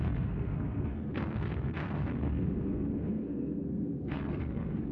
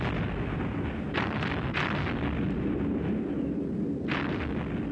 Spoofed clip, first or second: first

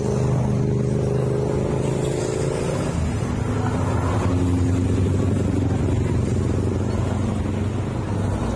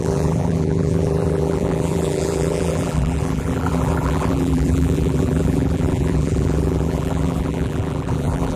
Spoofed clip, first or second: second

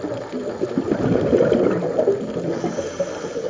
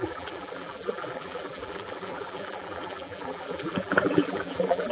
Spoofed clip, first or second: second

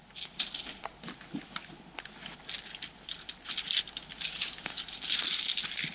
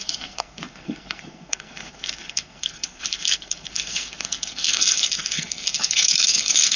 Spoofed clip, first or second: second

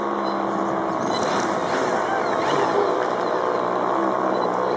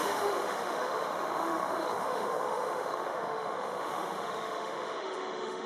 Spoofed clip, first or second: second